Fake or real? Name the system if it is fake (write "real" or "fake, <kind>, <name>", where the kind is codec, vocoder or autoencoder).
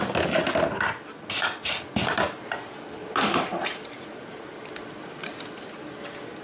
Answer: real